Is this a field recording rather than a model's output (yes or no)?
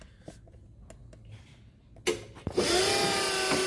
yes